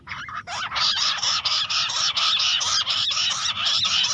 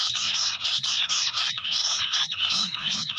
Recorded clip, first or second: first